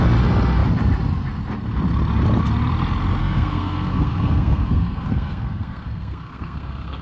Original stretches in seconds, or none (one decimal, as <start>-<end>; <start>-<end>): 0.0-3.2